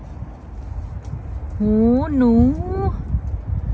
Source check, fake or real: real